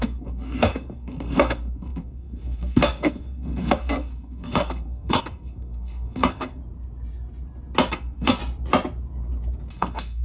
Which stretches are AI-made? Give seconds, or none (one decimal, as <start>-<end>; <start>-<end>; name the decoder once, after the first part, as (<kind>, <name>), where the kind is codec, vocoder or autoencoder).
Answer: 0.0-6.6 (codec, SNAC); 7.9-8.4; 9.7-10.2